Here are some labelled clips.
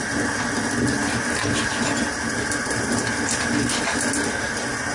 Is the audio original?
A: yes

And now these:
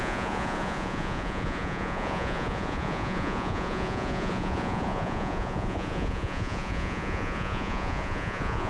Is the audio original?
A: no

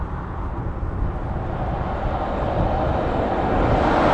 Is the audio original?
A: yes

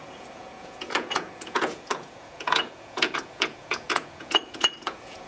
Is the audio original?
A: no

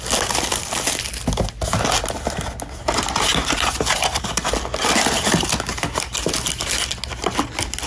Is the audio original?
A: yes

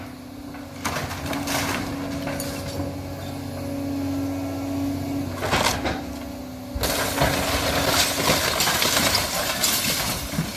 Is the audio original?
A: yes